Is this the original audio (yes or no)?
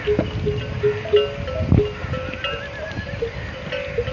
yes